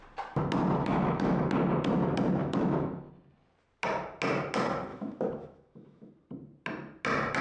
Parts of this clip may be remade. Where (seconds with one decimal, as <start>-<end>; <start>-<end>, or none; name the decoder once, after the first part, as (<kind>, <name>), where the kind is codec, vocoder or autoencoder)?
0.8-1.4 (autoencoder, DAC-VAE); 2.4-3.1; 4.9-6.1